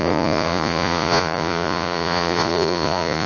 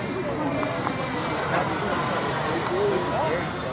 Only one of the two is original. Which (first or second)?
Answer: second